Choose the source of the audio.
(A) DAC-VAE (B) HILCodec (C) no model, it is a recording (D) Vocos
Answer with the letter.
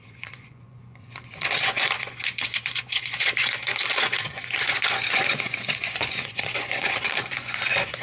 D